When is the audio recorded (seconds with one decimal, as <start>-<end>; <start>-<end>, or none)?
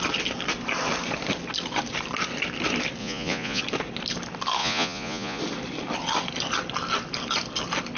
0.0-3.0; 3.6-4.6; 5.4-8.0